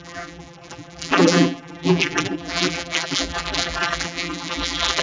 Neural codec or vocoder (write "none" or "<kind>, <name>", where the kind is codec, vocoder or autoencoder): vocoder, BigVGAN v2